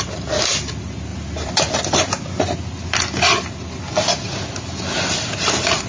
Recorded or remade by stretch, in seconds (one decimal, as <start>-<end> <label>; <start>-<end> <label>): 0.0-1.1 recorded; 1.1-1.9 remade; 1.9-5.9 recorded